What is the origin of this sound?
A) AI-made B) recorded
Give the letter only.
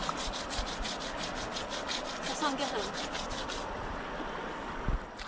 B